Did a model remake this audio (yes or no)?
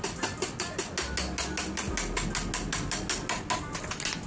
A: no